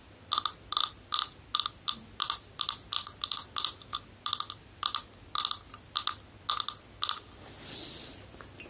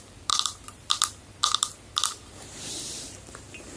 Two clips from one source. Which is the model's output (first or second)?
second